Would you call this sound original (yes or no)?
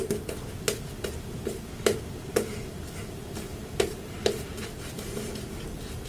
yes